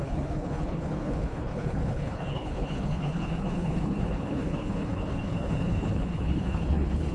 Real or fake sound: fake